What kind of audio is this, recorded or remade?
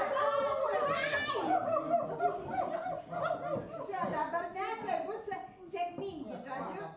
recorded